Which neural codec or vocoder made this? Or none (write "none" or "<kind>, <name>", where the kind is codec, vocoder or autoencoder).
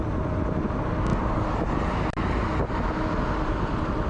none